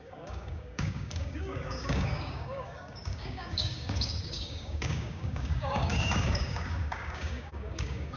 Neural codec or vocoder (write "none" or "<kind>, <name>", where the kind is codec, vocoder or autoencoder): codec, DAC